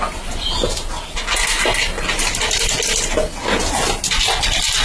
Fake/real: real